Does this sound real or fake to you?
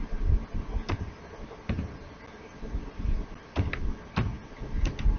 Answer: real